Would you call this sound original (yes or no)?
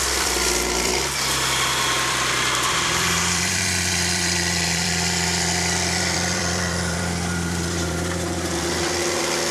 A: no